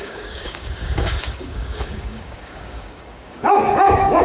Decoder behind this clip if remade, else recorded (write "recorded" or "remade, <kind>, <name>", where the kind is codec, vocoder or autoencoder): remade, codec, DAC